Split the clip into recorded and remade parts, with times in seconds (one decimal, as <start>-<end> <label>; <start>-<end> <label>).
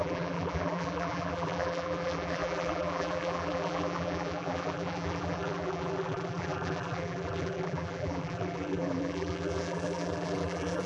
0.0-10.9 remade